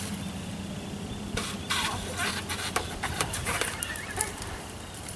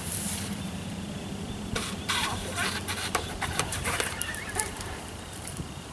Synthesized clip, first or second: second